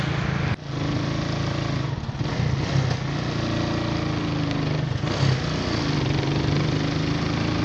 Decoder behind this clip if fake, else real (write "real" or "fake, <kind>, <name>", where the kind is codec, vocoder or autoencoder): real